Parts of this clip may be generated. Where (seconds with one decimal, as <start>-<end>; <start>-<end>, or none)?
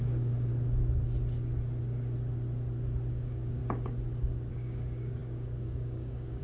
0.0-0.5; 3.1-3.6; 4.5-6.4